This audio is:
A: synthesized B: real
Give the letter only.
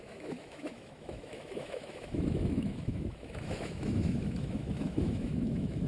A